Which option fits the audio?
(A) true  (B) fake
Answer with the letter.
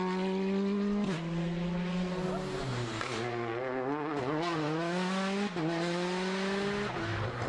A